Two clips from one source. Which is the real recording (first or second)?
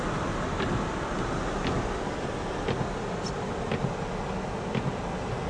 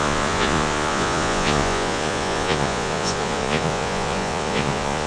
first